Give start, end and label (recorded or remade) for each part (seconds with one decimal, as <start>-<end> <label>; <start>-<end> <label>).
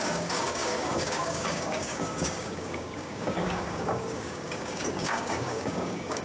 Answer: 0.0-6.2 remade